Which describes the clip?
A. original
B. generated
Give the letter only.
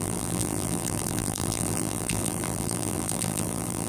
B